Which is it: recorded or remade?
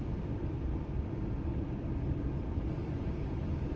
remade